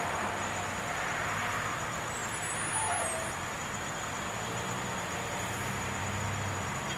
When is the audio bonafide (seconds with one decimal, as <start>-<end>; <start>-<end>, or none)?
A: 0.0-7.0